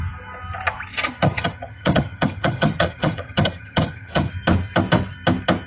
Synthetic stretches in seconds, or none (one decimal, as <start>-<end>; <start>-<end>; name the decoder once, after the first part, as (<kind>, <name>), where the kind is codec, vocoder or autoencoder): 0.9-4.3 (vocoder, HiFi-GAN)